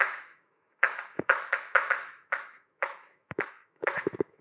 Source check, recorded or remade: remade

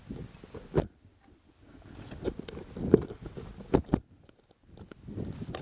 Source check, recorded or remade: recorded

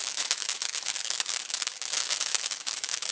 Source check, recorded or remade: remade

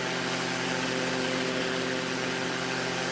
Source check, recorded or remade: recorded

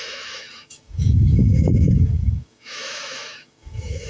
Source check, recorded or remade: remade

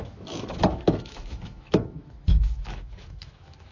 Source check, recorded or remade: remade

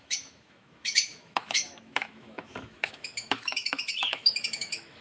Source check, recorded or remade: remade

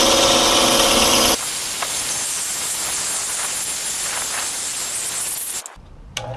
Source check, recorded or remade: recorded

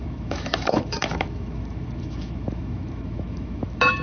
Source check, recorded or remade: remade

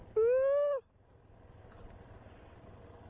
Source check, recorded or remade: recorded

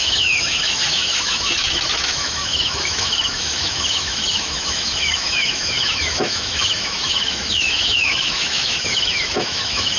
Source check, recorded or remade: remade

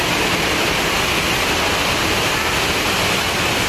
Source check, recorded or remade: recorded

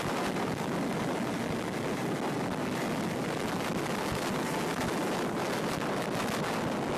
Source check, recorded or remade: recorded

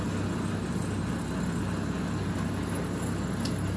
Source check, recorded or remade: recorded